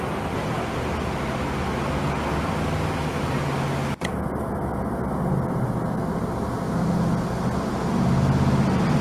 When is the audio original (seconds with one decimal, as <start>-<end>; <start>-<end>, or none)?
0.0-9.0